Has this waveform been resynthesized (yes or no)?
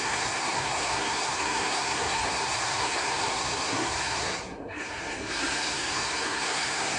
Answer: yes